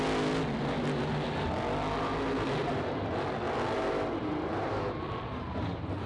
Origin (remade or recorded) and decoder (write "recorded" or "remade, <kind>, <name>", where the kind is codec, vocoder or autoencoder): recorded